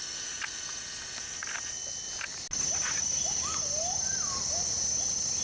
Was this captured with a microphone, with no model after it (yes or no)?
yes